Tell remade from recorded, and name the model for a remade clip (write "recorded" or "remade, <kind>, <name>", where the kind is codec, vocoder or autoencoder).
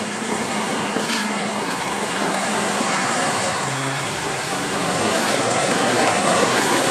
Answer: remade, codec, SNAC